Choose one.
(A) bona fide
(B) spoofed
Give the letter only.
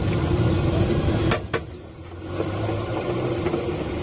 A